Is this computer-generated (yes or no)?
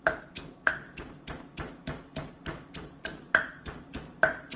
no